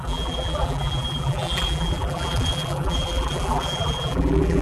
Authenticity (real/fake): fake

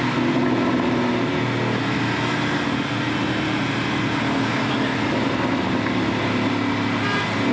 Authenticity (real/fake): real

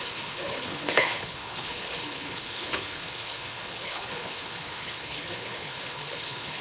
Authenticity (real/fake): fake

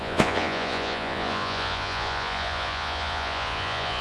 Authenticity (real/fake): fake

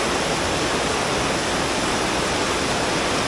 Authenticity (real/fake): real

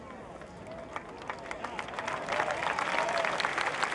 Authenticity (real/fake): real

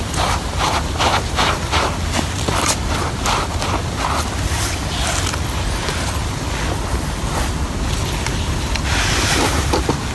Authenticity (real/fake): real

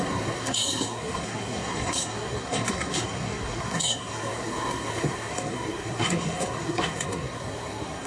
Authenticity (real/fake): fake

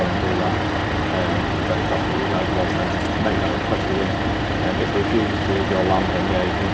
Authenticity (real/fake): real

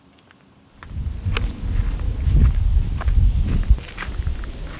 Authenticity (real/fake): real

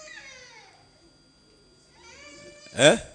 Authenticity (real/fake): real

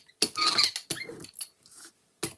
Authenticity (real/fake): real